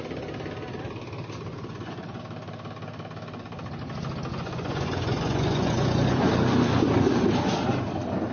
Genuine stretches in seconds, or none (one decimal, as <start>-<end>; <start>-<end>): 0.0-1.5; 2.2-4.3; 6.3-8.3